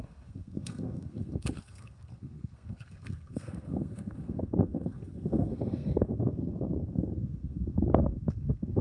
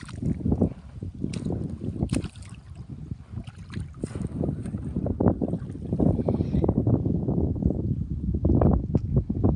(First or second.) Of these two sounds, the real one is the second